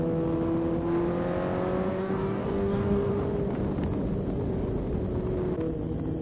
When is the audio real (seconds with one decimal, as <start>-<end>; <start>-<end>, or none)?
0.0-1.9; 3.1-6.2